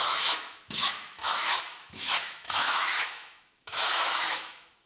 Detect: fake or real fake